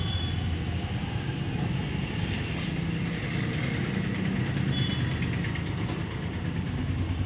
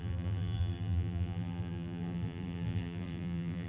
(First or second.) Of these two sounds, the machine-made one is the second